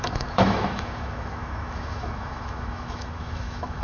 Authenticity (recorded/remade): remade